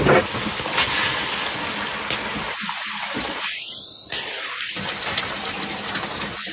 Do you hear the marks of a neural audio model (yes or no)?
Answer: no